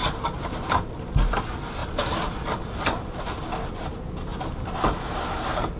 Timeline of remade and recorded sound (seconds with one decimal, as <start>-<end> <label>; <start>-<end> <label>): 0.0-1.8 recorded; 1.8-3.4 remade; 3.4-4.3 recorded; 4.3-5.2 remade; 5.2-5.8 recorded